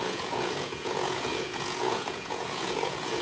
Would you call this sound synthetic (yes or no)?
yes